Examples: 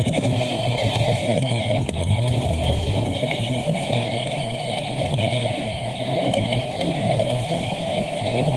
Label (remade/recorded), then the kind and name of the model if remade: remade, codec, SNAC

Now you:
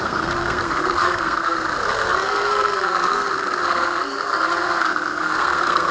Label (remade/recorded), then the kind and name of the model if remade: remade, codec, SNAC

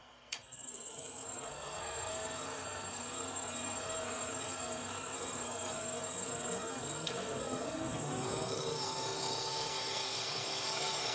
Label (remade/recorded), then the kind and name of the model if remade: remade, codec, SNAC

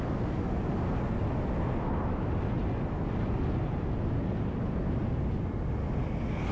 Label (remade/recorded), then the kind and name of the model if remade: recorded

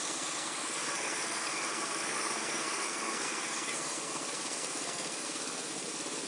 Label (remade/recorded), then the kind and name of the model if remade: remade, codec, SNAC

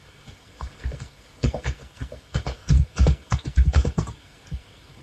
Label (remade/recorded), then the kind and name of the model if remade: remade, codec, SNAC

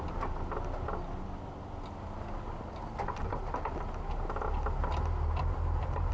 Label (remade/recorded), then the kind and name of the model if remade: recorded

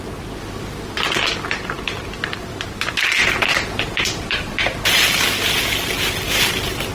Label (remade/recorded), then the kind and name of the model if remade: recorded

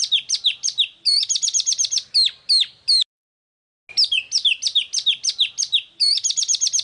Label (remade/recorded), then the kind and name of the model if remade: recorded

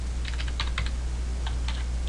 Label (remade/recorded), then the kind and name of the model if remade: recorded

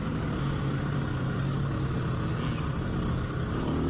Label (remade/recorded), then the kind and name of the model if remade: recorded